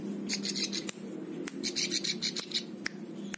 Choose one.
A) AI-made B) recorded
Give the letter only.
B